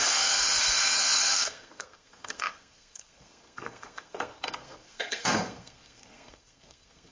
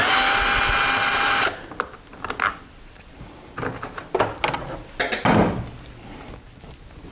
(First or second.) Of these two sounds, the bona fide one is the second